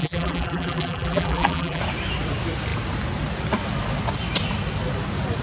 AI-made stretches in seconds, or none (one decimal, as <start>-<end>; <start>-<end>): 0.0-1.8